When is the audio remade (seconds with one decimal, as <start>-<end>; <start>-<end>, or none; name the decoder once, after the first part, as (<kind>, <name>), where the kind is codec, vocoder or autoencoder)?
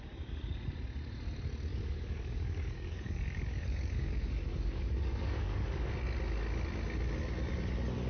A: 1.7-5.9 (codec, DAC)